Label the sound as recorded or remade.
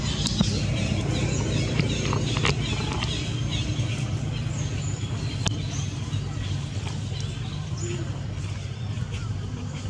recorded